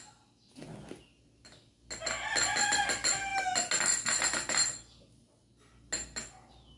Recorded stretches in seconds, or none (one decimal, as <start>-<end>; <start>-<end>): 0.0-6.8

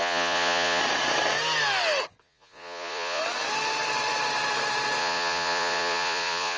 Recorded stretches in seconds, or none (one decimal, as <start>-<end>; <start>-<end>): 0.8-2.2; 3.2-5.0

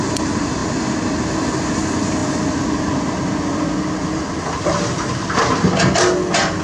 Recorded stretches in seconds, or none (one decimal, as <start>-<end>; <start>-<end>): 0.0-6.6

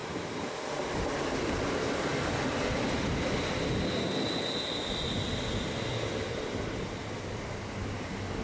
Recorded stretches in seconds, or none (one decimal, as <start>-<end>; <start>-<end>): 0.0-2.1; 6.8-8.4

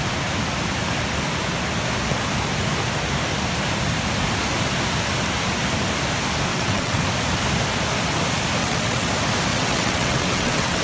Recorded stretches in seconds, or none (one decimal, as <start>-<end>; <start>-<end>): 0.0-6.5; 7.0-8.6; 9.1-9.5

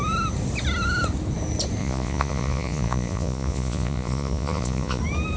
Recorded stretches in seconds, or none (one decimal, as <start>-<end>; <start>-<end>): 0.0-1.8; 5.0-5.4

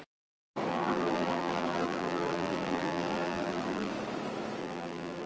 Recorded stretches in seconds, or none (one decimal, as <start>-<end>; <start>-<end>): 0.0-0.7; 3.9-4.6